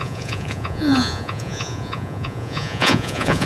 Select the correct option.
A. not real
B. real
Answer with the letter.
A